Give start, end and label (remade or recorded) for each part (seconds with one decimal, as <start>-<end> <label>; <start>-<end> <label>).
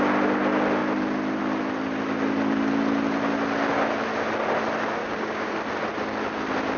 0.0-5.0 recorded; 5.0-5.5 remade; 5.5-6.8 recorded